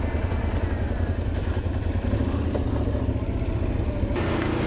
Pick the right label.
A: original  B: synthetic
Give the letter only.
A